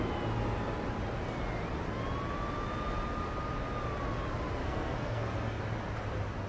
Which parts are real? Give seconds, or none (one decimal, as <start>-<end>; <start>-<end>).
0.0-4.6; 5.6-6.5